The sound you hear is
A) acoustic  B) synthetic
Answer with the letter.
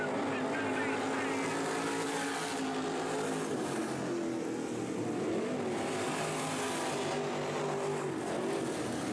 A